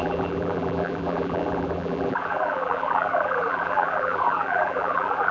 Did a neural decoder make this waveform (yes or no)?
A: yes